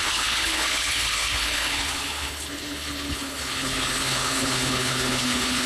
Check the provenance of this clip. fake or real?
fake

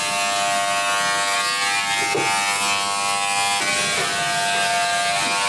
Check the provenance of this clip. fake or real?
real